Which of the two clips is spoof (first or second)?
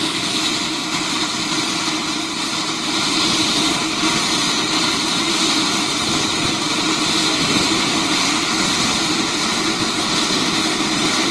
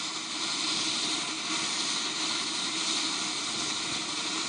first